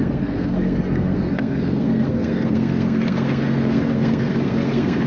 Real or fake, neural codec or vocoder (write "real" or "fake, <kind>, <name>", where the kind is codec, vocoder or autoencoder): fake, codec, SNAC